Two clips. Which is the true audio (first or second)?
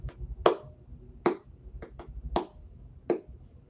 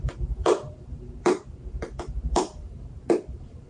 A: first